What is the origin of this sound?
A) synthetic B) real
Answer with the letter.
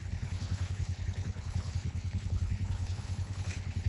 A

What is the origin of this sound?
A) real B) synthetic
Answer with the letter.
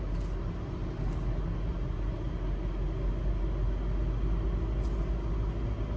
A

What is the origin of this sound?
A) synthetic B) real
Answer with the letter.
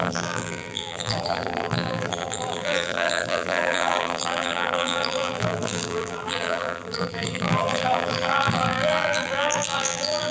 A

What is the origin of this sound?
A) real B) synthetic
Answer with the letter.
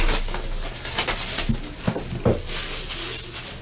A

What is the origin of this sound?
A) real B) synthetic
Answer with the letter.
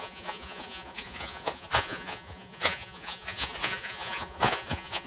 B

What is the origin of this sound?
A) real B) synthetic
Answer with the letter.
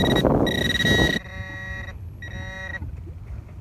A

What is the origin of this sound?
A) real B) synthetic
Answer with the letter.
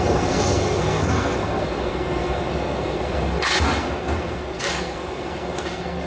B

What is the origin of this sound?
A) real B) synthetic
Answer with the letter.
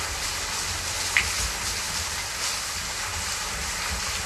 A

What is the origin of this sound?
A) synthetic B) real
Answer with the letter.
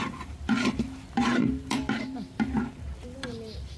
A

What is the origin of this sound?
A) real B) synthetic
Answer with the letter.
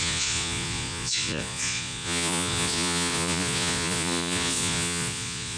B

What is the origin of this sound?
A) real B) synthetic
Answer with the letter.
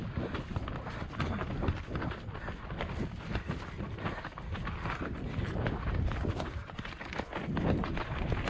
A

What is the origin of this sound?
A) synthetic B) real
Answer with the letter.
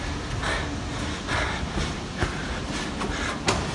B